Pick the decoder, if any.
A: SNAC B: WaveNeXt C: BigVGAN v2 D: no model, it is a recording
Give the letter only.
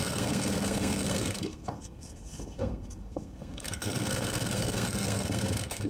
A